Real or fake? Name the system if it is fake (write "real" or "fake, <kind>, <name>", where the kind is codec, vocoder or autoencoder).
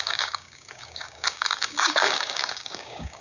fake, codec, DAC